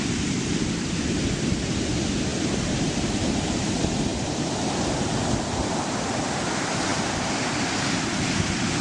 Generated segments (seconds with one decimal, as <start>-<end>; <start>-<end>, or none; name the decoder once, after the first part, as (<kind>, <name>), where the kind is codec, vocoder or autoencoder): none